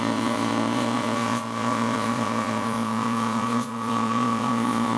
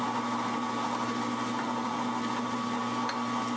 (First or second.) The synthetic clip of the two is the first